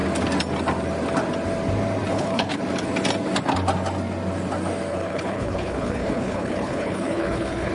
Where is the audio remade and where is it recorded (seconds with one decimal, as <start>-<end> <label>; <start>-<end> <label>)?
0.0-2.1 recorded; 2.1-2.6 remade; 2.6-4.9 recorded; 4.9-7.7 remade